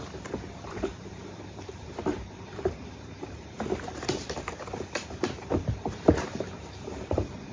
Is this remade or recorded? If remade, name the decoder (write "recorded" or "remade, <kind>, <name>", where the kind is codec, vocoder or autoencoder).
remade, vocoder, BigVGAN v2